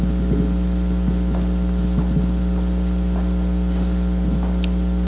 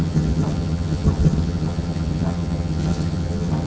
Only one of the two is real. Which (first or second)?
first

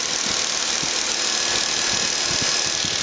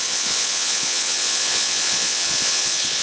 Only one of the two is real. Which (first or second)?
first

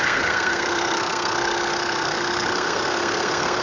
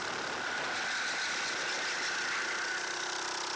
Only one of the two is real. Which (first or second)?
second